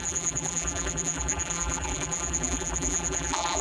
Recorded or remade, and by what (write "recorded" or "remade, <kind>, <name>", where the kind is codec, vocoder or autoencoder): remade, vocoder, BigVGAN v2